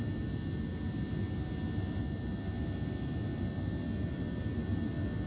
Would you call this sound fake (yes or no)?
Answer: no